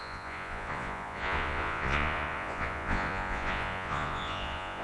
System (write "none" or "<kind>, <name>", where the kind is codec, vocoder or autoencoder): vocoder, Vocos